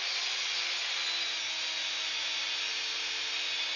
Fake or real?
real